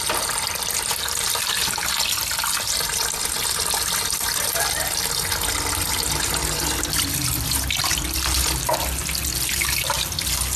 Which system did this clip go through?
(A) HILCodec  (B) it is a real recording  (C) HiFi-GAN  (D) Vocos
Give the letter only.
B